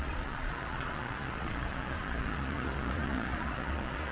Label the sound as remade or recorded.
remade